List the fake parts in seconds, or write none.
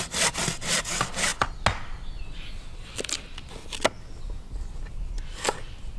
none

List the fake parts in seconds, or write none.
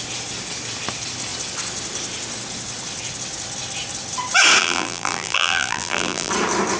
4.6-6.3 (vocoder, BigVGAN v2)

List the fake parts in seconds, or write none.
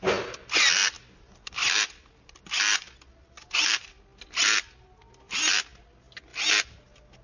0.8-4.0 (vocoder, BigVGAN v2)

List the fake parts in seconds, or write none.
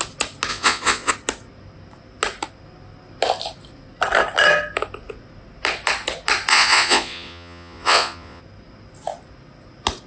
0.5-1.1 (vocoder, Vocos); 6.5-8.4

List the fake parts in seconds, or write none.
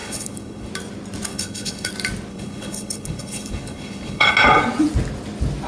0.0-0.7 (codec, HILCodec); 1.3-1.9; 2.3-4.3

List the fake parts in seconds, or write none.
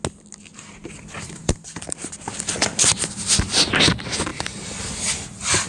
1.4-2.5 (vocoder, BigVGAN v2); 4.3-4.8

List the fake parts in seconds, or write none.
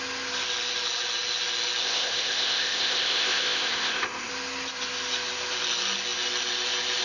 1.8-4.3 (codec, ZipCodec)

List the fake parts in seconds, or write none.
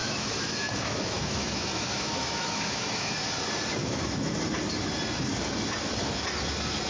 0.0-3.1 (autoencoder, DAC-VAE); 3.8-4.3